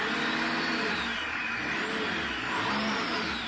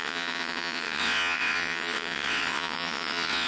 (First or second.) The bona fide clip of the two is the first